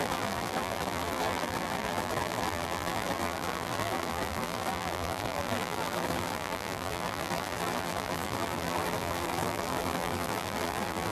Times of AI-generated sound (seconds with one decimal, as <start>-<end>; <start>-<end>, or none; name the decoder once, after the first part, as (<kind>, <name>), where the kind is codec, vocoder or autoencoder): 0.0-11.1 (vocoder, BigVGAN v2)